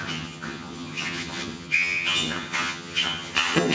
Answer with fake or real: fake